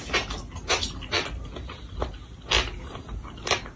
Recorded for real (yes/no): yes